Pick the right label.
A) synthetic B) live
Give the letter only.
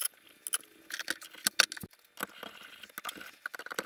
B